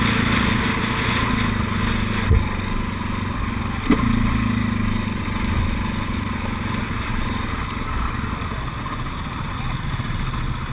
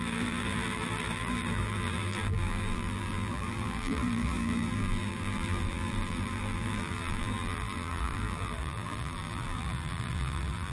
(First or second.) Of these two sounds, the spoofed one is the second